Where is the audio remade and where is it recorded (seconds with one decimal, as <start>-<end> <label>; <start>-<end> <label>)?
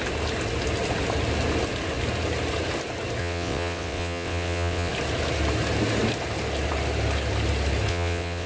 0.0-3.2 recorded; 3.2-4.9 remade; 4.9-7.9 recorded; 7.9-8.5 remade